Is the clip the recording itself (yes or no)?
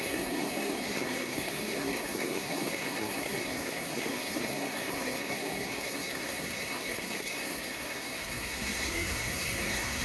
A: no